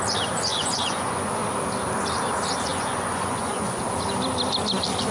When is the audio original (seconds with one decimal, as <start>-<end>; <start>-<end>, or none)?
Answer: 0.0-0.5; 1.3-2.7; 3.8-5.1